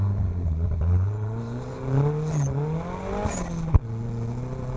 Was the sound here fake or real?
real